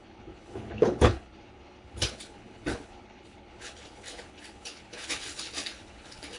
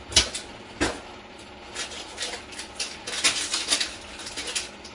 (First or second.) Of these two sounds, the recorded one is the second